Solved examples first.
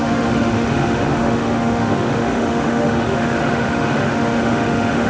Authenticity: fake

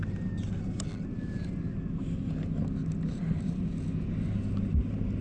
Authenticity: real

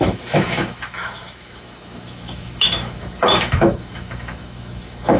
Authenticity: fake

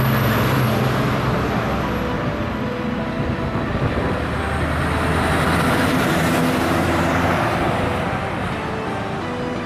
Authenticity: real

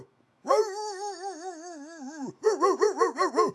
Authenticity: fake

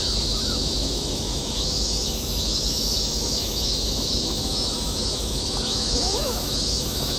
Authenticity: fake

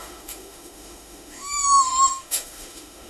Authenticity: fake